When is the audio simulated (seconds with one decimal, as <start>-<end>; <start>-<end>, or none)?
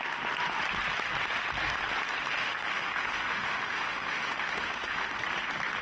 2.4-5.2